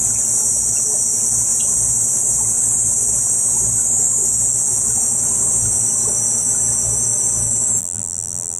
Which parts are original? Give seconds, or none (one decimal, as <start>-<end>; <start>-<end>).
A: 0.0-7.8